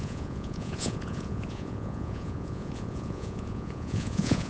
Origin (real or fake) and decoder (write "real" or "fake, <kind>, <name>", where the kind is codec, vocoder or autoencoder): fake, vocoder, Vocos